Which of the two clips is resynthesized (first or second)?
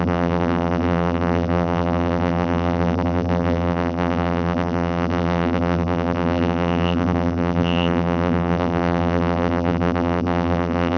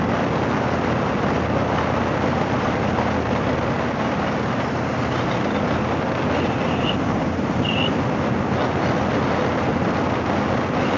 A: first